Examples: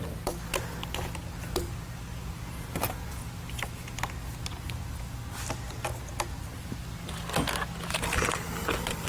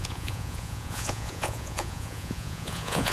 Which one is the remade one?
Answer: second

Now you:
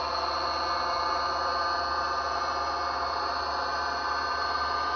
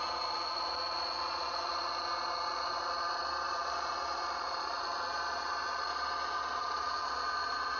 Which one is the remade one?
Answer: second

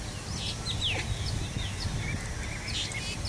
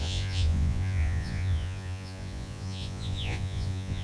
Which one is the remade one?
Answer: second